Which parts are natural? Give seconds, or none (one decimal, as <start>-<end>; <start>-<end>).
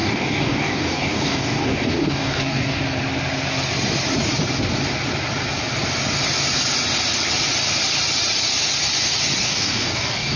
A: 2.8-9.4